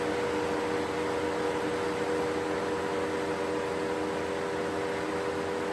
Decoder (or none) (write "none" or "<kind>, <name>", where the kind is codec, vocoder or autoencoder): none